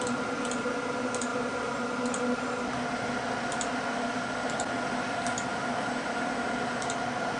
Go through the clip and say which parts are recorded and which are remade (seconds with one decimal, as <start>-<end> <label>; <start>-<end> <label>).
0.0-7.4 recorded